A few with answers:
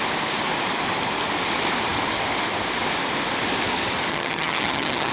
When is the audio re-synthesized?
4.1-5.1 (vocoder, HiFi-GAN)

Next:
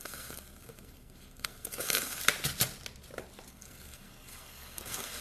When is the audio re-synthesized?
0.0-2.2 (codec, SNAC); 3.5-5.2

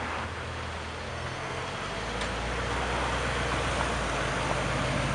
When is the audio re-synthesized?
1.1-1.6 (codec, SNAC)

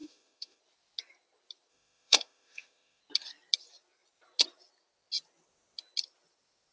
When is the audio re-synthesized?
0.0-0.6 (autoencoder, DAC-VAE); 1.7-3.0

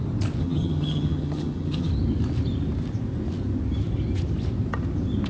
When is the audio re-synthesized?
0.4-1.9 (vocoder, HiFi-GAN)